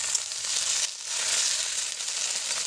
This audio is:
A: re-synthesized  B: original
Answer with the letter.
B